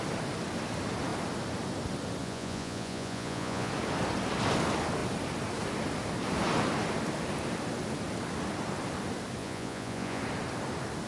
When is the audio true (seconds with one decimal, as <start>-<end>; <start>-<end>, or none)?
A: 0.0-2.2; 3.7-9.4; 10.2-11.1